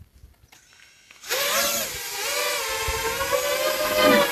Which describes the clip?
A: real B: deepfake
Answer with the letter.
A